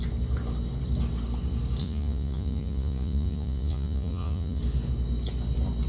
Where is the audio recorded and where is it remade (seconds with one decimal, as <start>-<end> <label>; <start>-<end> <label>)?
0.0-1.8 recorded; 1.8-4.6 remade; 4.6-5.9 recorded